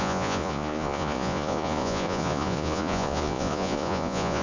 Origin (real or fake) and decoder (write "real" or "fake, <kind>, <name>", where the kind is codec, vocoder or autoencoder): fake, vocoder, Vocos